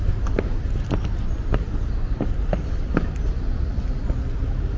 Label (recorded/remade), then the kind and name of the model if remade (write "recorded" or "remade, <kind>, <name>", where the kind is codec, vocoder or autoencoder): recorded